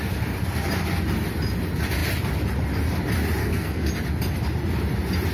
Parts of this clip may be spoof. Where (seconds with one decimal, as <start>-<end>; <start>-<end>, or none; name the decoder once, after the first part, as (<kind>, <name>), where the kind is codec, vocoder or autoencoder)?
3.4-3.9 (codec, SNAC)